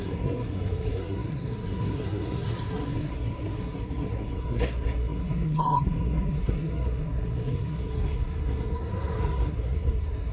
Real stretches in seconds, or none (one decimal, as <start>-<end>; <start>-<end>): none